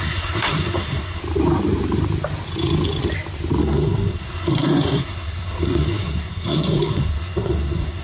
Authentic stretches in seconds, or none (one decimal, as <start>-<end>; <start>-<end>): 1.2-3.6